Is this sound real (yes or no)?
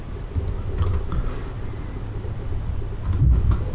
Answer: yes